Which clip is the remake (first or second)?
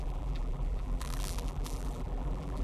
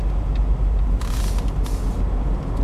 first